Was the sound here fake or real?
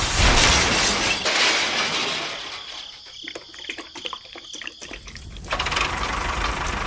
real